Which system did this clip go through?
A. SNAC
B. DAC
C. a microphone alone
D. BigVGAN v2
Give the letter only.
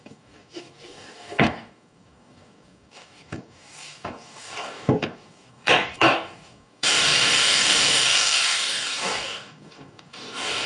B